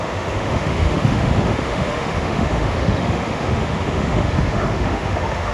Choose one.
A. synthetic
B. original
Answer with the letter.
A